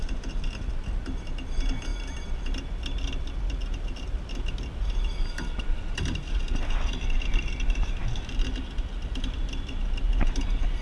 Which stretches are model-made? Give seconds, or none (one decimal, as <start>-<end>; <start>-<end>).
none